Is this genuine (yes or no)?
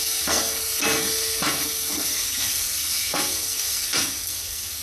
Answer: no